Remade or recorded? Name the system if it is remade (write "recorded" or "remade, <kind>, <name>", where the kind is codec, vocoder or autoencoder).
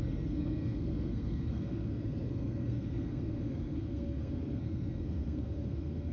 remade, codec, SNAC